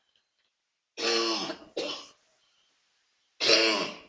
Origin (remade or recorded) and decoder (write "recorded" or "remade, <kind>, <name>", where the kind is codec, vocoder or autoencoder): recorded